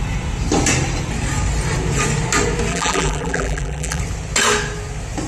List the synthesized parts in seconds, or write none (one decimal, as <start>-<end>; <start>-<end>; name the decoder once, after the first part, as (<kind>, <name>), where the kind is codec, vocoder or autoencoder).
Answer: 2.7-4.0 (vocoder, BigVGAN v2)